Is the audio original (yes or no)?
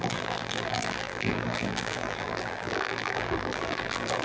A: no